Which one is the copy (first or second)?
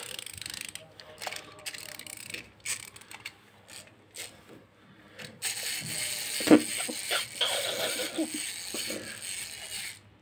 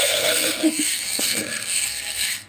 second